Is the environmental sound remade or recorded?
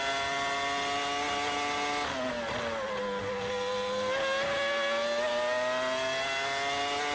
recorded